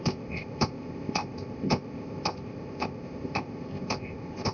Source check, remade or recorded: remade